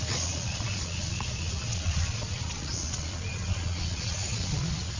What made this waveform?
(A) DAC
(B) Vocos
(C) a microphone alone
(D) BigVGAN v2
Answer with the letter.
B